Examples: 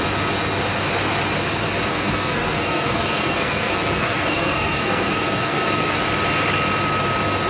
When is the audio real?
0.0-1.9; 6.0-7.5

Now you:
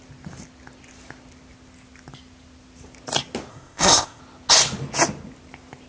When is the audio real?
0.0-3.5; 4.2-5.9